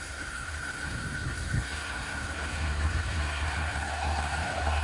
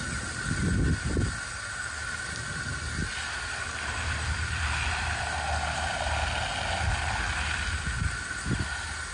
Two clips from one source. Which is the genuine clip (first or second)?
second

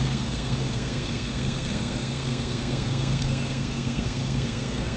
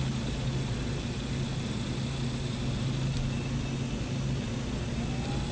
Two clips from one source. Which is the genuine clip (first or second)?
second